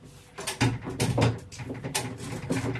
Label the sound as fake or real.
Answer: real